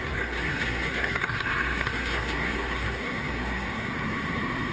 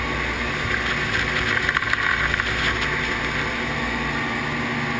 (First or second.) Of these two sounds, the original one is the second